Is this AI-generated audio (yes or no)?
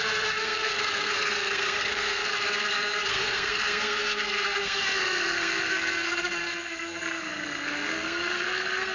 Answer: yes